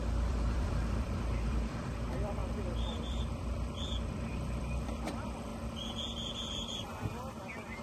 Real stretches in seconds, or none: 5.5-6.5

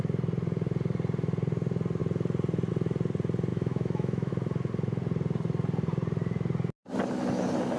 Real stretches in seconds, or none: 0.0-3.5; 4.3-7.8

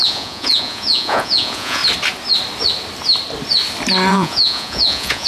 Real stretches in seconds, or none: 1.8-4.1

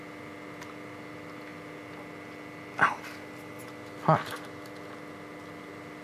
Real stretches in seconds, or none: 0.0-6.0

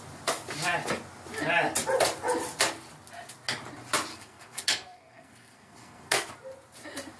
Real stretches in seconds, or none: 0.0-4.1; 6.3-7.2

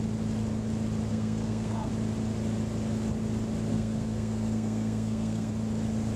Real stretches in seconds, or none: 0.0-1.1; 1.9-3.7; 5.5-6.2

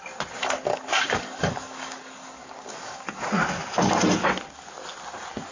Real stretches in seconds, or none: 0.0-0.7; 3.3-5.5